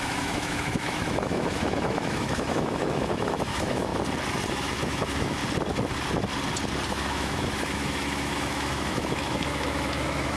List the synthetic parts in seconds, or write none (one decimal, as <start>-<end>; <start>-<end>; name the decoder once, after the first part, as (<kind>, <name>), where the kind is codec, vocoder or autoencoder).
0.0-3.9 (autoencoder, DAC-VAE); 4.5-5.4; 6.9-10.4